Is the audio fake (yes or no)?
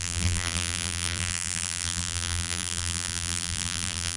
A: yes